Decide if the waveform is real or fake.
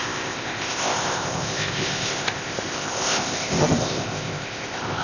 fake